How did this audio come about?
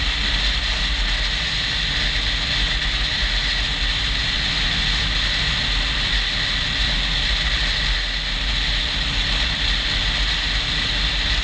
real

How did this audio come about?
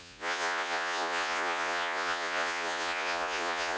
fake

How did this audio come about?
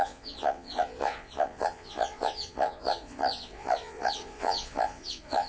fake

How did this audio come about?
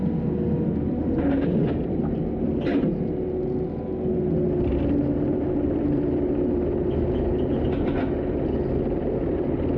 real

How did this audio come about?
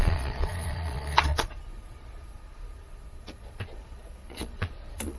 fake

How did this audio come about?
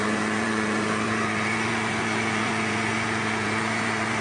fake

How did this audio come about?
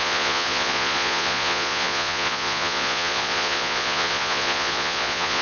fake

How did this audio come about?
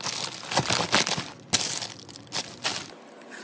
real